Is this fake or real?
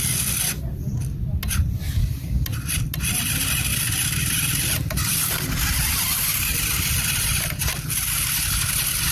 real